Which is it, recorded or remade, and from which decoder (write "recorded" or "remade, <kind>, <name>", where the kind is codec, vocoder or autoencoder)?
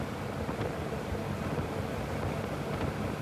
recorded